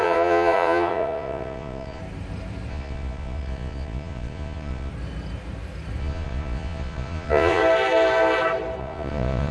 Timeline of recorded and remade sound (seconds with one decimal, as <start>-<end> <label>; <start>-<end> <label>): 0.0-2.0 remade; 2.0-2.7 recorded; 2.7-4.9 remade; 4.9-6.0 recorded; 6.0-7.6 remade; 7.6-8.8 recorded; 8.8-9.5 remade